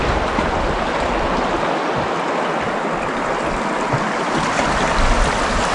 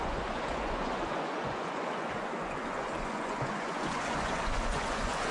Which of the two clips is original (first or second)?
first